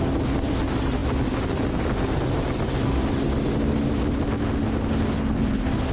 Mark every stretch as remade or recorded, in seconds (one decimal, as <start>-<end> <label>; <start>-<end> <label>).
0.0-5.9 recorded